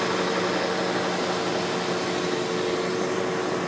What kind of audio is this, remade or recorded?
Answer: recorded